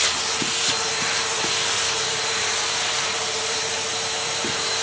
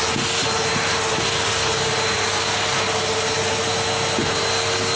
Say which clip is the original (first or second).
second